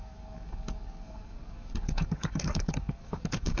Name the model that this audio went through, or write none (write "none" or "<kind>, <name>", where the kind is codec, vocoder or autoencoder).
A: codec, DAC